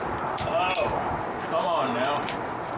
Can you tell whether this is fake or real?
real